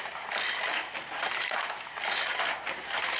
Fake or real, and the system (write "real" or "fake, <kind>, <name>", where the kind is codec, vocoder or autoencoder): real